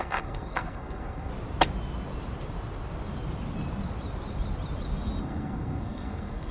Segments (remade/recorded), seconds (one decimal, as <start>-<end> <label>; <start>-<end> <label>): 0.0-1.3 remade; 1.3-5.2 recorded; 5.2-6.5 remade

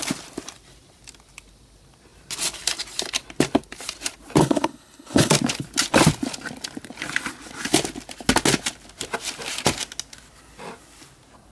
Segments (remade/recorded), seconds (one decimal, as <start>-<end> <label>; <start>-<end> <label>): 0.0-4.4 recorded; 4.4-5.3 remade; 5.3-11.5 recorded